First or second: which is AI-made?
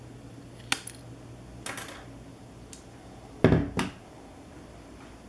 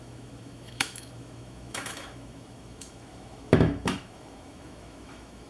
second